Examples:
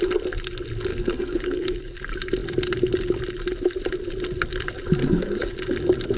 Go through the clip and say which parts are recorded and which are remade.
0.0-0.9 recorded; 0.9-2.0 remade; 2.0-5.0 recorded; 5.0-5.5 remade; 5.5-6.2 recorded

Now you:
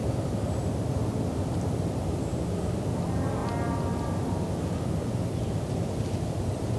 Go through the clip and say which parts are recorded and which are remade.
0.0-6.8 recorded

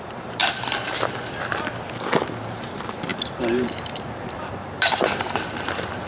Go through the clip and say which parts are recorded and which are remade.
0.0-0.4 remade; 0.4-2.5 recorded; 2.5-6.1 remade

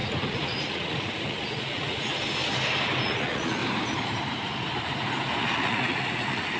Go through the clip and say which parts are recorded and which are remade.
0.0-2.1 remade; 2.1-3.0 recorded; 3.0-3.6 remade; 3.6-5.4 recorded; 5.4-6.6 remade

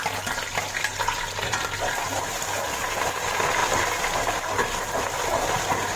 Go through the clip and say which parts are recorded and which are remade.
0.0-6.0 recorded

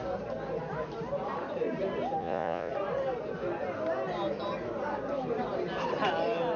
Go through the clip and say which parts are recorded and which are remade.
0.0-2.2 recorded; 2.2-2.7 remade; 2.7-6.6 recorded